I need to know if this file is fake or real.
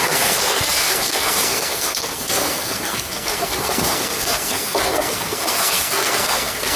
fake